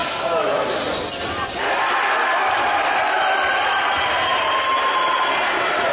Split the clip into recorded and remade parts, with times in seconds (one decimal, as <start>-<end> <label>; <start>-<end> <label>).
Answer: 0.0-5.9 recorded